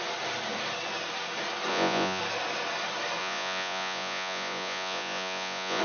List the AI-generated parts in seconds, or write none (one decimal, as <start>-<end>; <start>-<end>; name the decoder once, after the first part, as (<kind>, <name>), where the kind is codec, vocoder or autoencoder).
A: 1.7-2.2 (vocoder, Vocos); 3.2-5.8